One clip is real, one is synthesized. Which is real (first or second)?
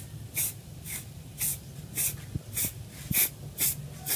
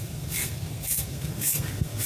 first